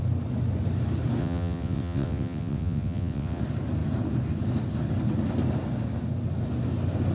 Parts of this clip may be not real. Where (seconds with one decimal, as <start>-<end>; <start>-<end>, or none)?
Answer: 1.2-3.4